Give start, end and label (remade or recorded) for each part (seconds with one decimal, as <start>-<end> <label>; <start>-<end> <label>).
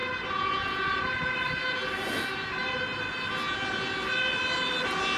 0.0-5.2 recorded